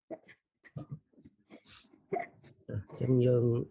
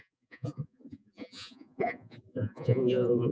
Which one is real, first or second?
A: first